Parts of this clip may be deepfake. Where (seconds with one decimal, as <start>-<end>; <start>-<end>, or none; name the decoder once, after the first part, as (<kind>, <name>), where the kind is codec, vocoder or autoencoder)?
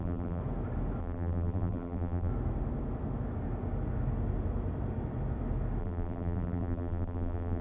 0.0-0.4 (vocoder, BigVGAN v2); 1.0-2.3; 5.8-7.6